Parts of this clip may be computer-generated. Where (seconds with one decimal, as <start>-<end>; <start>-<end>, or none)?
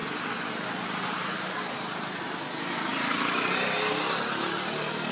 none